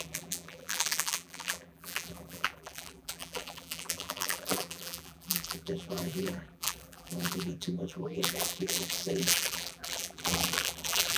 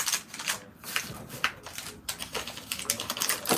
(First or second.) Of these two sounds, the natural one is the second